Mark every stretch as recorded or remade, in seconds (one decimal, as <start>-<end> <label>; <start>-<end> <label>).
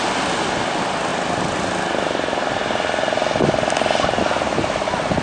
0.0-5.2 recorded